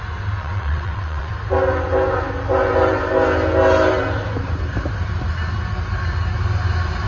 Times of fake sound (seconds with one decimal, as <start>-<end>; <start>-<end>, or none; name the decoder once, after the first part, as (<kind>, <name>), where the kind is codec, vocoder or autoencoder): 0.4-1.3 (vocoder, WaveNeXt)